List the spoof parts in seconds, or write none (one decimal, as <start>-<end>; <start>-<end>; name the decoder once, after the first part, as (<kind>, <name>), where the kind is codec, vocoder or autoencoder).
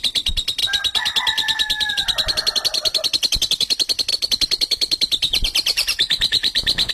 0.0-0.6 (vocoder, BigVGAN v2); 1.9-6.9